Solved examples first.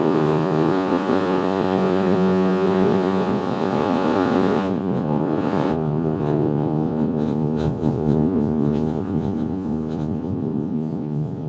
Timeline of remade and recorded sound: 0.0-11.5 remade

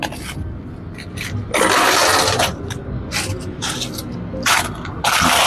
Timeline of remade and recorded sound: 0.0-5.5 recorded

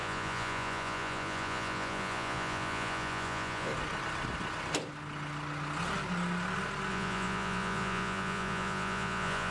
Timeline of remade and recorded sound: 0.0-3.7 remade; 3.7-6.9 recorded; 6.9-9.5 remade

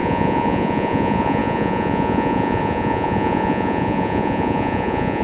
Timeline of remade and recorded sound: 0.0-5.2 remade